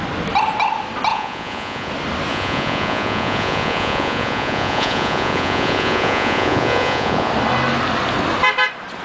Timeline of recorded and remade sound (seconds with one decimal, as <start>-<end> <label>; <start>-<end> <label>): 0.0-1.1 recorded; 1.1-1.9 remade; 1.9-2.3 recorded; 2.3-7.3 remade; 7.3-9.0 recorded